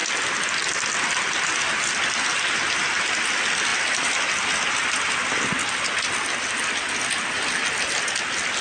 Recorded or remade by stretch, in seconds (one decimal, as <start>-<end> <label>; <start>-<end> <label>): 0.0-8.6 recorded